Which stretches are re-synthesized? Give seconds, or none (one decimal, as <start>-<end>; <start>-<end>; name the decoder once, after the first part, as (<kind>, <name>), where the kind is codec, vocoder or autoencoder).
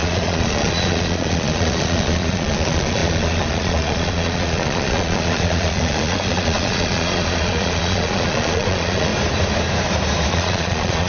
0.0-9.1 (vocoder, Vocos); 10.3-11.1